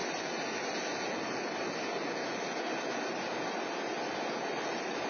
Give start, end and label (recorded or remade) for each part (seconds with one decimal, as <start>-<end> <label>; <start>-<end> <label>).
0.0-5.1 recorded